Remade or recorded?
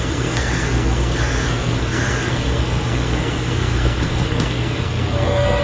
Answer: remade